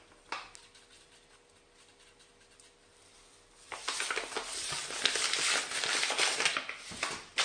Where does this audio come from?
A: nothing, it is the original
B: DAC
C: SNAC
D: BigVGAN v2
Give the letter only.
A